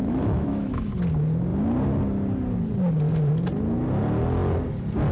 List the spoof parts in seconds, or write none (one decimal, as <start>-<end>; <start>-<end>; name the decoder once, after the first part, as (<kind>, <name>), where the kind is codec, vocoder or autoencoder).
0.0-0.9 (autoencoder, DAC-VAE)